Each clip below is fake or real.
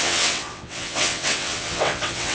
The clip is fake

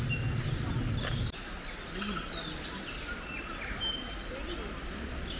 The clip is real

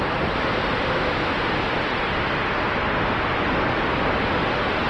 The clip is real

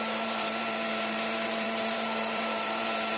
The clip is fake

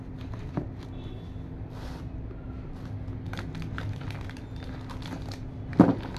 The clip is real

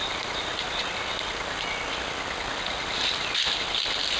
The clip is real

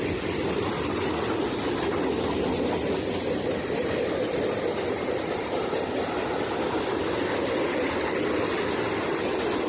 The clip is real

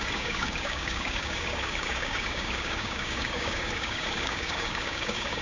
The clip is fake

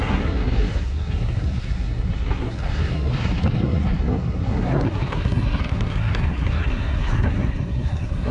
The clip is fake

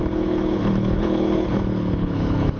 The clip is fake